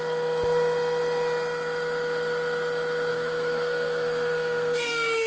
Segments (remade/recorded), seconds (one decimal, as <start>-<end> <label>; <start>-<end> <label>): 0.0-3.1 recorded; 3.1-5.3 remade